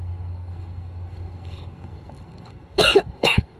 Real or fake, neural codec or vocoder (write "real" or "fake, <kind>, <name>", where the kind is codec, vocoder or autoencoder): fake, codec, SNAC